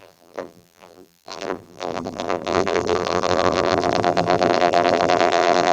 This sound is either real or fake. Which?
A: fake